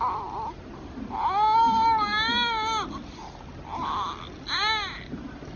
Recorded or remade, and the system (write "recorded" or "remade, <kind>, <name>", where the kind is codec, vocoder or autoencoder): recorded